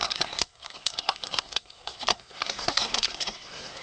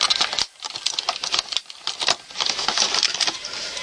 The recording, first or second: second